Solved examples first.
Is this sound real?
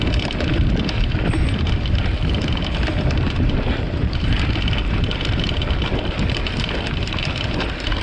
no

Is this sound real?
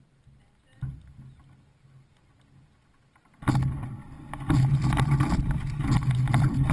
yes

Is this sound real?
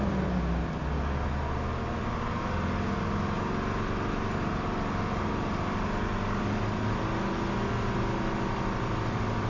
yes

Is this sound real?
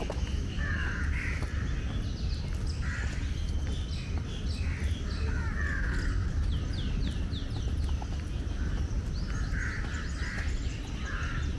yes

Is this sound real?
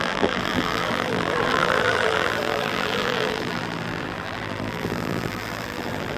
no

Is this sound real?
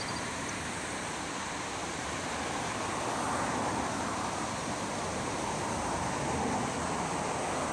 yes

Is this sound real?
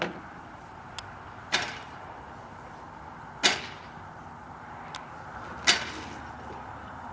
yes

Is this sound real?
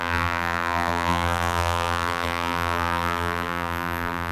no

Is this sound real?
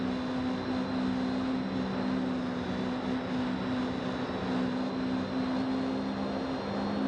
yes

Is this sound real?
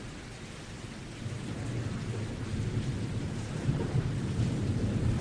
yes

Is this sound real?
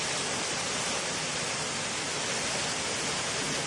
yes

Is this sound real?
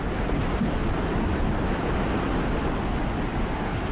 yes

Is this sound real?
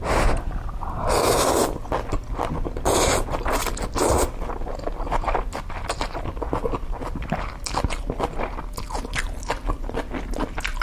yes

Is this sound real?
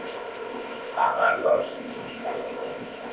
no